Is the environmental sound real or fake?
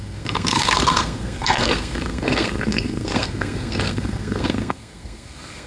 fake